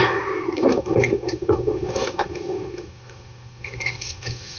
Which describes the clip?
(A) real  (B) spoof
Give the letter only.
B